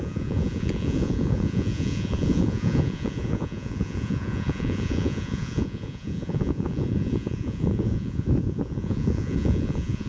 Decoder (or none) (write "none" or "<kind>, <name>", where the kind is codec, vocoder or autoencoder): vocoder, Vocos